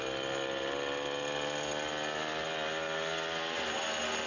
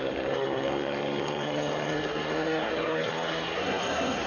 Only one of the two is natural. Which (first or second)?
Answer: first